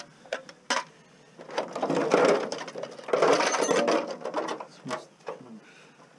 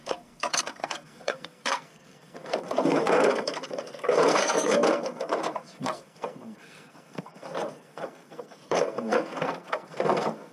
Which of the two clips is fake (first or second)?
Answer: second